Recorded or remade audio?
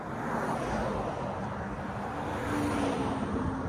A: recorded